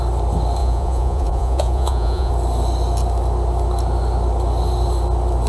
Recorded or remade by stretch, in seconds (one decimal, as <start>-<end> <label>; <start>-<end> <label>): 0.0-0.6 recorded; 0.6-2.3 remade; 2.3-5.5 recorded